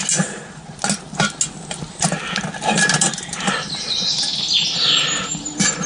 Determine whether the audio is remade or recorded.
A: recorded